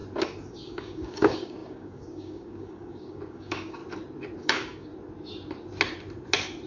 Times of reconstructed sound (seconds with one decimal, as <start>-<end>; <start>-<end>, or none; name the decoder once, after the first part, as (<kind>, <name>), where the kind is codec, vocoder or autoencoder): 0.5-3.8 (codec, DAC); 4.4-4.9